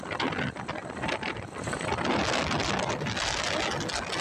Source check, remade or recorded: recorded